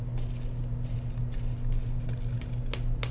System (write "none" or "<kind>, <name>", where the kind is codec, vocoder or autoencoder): none